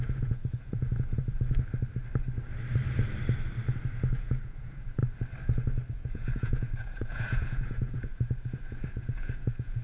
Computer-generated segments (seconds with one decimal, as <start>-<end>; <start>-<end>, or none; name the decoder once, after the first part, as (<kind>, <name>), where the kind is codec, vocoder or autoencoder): 0.0-1.2 (vocoder, Vocos); 4.2-5.0; 5.9-9.8